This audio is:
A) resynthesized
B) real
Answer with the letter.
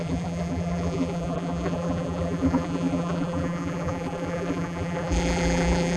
A